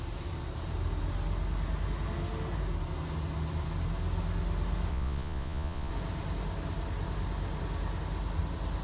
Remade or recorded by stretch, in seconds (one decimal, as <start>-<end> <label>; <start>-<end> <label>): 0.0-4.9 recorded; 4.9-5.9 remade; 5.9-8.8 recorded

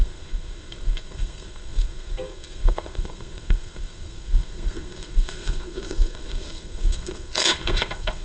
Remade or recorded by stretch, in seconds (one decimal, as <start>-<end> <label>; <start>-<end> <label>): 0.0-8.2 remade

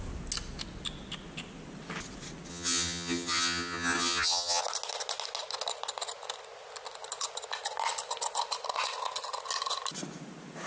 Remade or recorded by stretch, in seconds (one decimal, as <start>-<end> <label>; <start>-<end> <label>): 0.0-2.5 recorded; 2.5-4.6 remade; 4.6-10.7 recorded

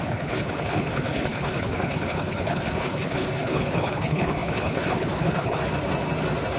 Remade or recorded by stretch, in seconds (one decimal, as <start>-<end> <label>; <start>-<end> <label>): 0.0-5.6 remade; 5.6-6.6 recorded

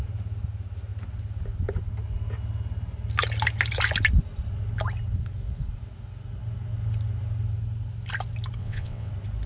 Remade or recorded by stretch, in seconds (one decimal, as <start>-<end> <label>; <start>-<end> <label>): 0.0-8.6 recorded; 8.6-9.1 remade; 9.1-9.5 recorded